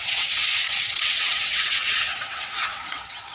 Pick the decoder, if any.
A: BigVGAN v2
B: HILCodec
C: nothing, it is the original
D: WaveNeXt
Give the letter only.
D